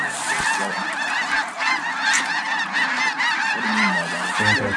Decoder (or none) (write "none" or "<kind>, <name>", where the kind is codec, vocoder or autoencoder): none